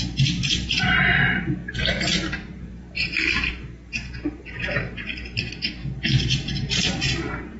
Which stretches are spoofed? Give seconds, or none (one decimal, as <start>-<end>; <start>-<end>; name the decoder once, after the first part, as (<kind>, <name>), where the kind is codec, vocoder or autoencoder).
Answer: 0.0-7.6 (vocoder, BigVGAN v2)